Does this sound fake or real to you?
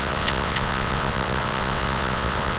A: fake